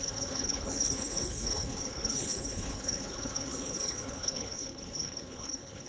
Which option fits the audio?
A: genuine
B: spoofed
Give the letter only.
B